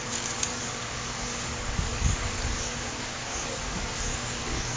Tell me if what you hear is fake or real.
fake